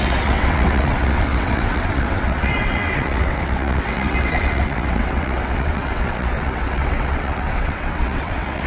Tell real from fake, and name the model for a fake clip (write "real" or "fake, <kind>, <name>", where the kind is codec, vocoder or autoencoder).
fake, vocoder, WaveNeXt